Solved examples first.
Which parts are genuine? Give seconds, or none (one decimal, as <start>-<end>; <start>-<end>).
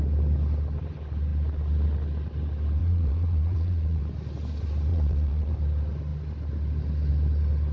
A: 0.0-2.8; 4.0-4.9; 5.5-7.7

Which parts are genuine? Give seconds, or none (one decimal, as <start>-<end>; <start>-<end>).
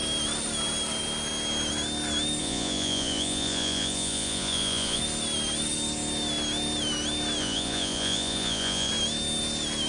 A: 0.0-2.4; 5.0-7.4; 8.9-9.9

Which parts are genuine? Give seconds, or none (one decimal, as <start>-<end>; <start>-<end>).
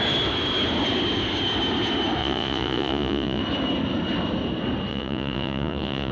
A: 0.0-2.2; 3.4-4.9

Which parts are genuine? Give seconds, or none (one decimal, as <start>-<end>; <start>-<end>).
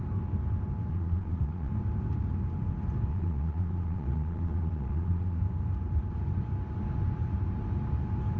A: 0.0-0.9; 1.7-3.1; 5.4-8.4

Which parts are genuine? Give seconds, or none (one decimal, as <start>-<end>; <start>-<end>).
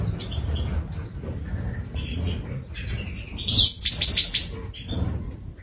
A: 0.0-2.1; 3.8-5.6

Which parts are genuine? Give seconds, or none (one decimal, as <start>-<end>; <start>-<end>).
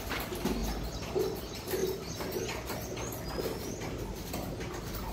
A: 0.0-5.1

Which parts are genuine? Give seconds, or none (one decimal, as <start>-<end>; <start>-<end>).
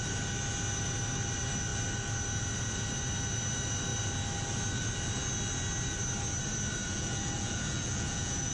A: 0.0-6.9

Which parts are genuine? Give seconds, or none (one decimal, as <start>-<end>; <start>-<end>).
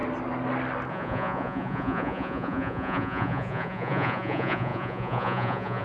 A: 0.0-0.9